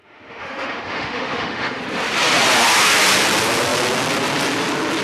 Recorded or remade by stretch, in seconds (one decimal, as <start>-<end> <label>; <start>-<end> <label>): 0.0-1.8 remade; 1.8-5.0 recorded